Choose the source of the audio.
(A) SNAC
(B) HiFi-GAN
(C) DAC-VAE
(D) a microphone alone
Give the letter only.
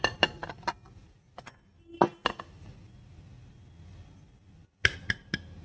D